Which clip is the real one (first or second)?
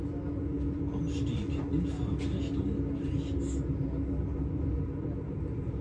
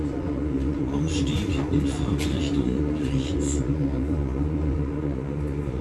first